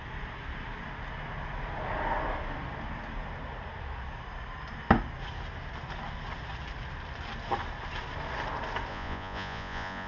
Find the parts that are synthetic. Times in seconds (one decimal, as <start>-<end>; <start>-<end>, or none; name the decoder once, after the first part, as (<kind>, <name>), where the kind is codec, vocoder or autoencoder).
8.9-10.1 (vocoder, Vocos)